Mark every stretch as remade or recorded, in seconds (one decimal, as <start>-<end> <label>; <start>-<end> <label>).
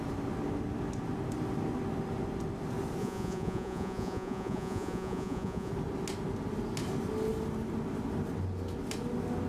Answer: 0.0-3.0 recorded; 3.0-5.7 remade; 5.7-9.5 recorded